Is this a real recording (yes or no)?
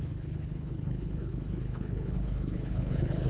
no